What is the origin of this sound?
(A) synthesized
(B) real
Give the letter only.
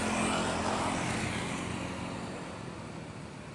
B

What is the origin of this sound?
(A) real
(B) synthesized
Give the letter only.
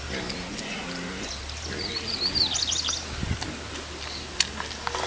A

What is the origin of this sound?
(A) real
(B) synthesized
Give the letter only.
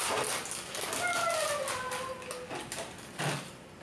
A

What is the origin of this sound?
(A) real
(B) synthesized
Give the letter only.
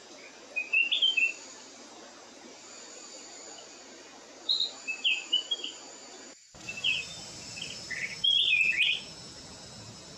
A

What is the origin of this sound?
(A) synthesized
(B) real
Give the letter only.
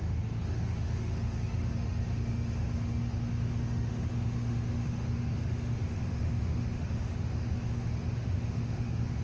A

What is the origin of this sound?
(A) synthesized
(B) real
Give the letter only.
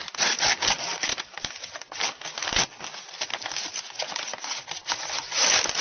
B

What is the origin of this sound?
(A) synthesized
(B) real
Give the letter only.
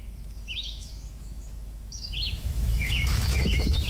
A